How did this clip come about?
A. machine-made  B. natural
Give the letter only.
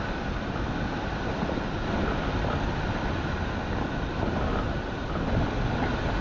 B